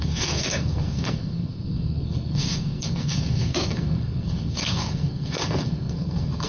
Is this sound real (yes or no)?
no